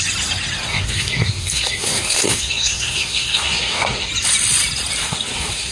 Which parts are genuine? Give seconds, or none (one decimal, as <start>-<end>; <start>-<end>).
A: 0.0-0.7; 4.1-5.0